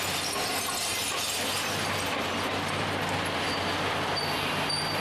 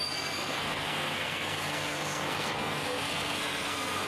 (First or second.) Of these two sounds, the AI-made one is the second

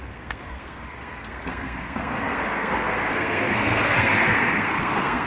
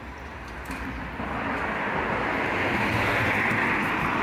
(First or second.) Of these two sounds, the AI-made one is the first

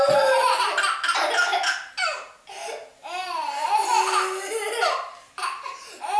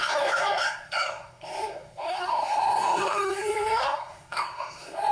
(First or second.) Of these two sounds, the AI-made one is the second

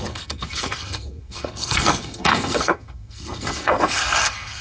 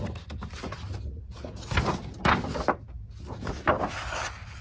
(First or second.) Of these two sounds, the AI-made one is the first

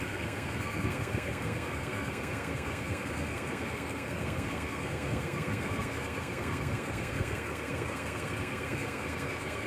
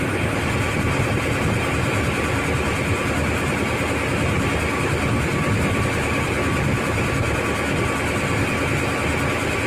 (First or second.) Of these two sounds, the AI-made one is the first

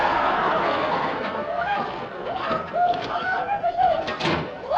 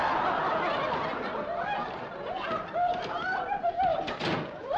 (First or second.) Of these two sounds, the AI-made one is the first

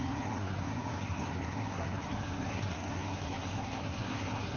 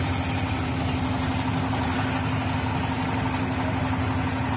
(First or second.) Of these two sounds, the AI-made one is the first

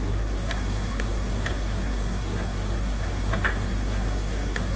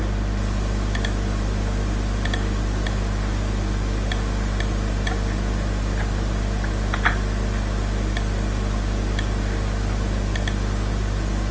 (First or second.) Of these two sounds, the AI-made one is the first